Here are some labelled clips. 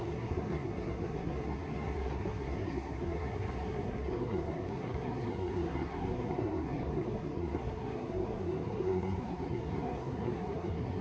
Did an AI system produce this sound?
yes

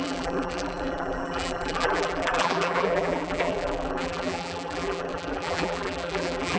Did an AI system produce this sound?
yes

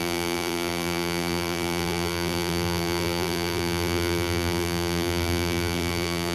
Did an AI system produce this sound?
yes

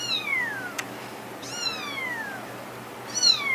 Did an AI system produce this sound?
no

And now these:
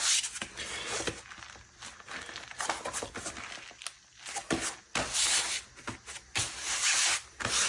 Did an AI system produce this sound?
no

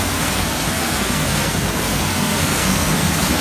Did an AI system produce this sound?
yes